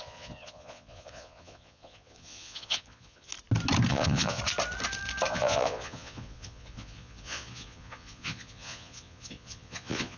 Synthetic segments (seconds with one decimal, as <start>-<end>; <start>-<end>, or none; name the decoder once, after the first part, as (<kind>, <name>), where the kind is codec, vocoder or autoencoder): 0.0-3.3 (vocoder, Vocos); 3.9-4.4; 5.3-10.2